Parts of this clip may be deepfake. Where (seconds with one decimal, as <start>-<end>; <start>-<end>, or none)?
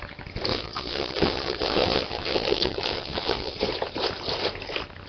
0.5-3.6